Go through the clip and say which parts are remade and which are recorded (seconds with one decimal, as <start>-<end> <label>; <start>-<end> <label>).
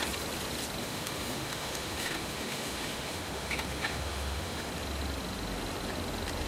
0.0-0.8 recorded; 0.8-4.7 remade; 4.7-6.5 recorded